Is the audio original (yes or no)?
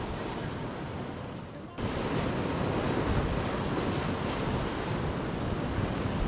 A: yes